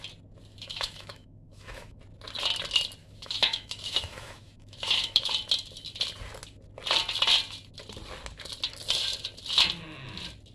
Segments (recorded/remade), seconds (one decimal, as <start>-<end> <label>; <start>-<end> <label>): 0.0-0.5 recorded; 0.5-2.0 remade; 2.0-3.0 recorded; 3.0-5.3 remade; 5.3-10.5 recorded